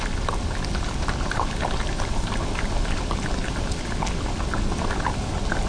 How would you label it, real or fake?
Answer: real